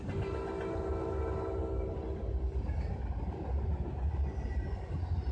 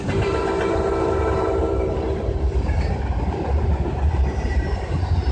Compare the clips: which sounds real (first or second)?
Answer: first